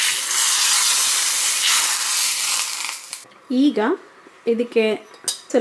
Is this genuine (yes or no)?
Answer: yes